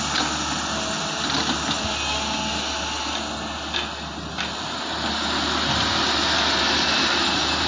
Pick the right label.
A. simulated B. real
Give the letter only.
B